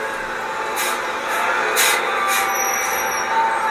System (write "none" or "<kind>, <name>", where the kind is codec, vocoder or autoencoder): none